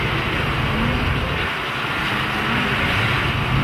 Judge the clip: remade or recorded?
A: recorded